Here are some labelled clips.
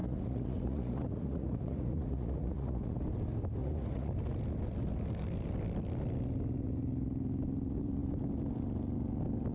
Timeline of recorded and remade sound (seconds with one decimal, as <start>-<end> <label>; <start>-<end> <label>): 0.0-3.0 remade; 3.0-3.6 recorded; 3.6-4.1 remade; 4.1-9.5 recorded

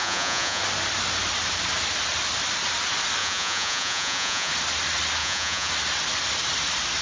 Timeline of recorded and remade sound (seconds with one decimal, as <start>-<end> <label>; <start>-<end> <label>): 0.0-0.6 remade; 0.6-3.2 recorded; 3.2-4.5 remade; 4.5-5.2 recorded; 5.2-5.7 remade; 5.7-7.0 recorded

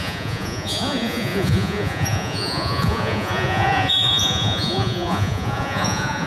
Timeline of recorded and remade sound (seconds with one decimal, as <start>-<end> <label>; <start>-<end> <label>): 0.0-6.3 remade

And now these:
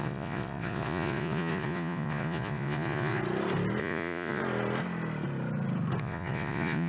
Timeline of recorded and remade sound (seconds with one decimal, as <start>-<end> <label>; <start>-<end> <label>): 0.0-3.2 remade; 3.2-3.8 recorded; 3.8-4.4 remade; 4.4-6.0 recorded; 6.0-6.9 remade

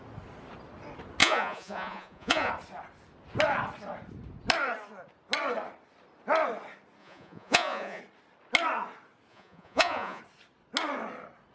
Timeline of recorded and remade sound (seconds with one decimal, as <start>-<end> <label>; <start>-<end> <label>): 0.0-1.2 recorded; 1.2-2.5 remade; 2.5-7.0 recorded; 7.0-8.0 remade; 8.0-9.3 recorded; 9.3-10.2 remade; 10.2-11.5 recorded

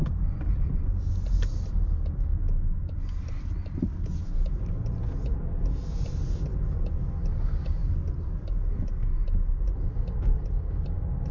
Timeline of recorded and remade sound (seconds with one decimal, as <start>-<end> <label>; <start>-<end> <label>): 0.0-11.3 recorded